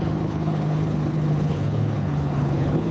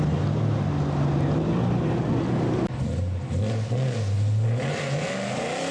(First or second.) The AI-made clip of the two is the first